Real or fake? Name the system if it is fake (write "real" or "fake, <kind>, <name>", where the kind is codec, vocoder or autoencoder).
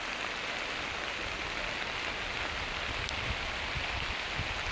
real